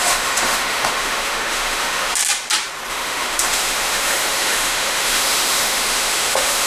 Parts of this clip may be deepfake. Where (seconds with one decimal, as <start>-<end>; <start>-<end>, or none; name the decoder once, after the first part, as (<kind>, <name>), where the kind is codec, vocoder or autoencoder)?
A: 0.0-2.2 (autoencoder, DAC-VAE); 2.9-6.7